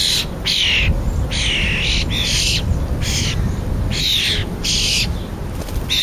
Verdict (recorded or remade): recorded